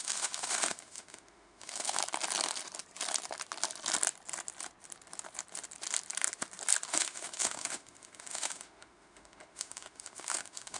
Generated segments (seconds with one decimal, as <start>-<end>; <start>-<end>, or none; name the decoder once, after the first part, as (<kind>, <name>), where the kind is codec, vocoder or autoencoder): 0.0-2.0 (autoencoder, DAC-VAE); 6.9-10.8